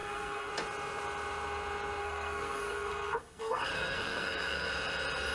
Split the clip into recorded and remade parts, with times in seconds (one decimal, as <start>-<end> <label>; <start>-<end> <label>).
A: 0.0-0.5 remade; 0.5-2.0 recorded; 2.0-4.7 remade; 4.7-5.3 recorded